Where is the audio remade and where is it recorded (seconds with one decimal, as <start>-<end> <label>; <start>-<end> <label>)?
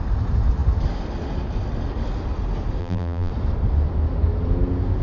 0.0-2.8 recorded; 2.8-3.3 remade; 3.3-5.0 recorded